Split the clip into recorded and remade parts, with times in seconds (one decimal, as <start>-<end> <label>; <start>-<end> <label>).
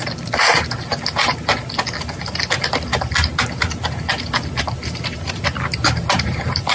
0.0-6.7 recorded